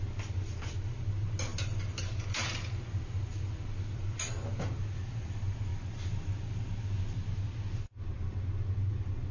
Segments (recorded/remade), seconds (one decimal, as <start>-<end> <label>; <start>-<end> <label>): 0.0-9.3 recorded